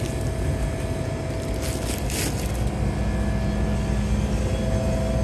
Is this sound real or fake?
real